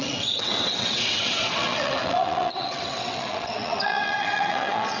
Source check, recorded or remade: remade